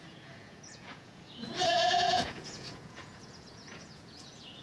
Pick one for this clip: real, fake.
fake